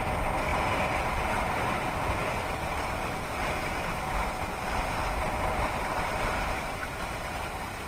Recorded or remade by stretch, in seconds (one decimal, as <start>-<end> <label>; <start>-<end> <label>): 0.0-7.9 recorded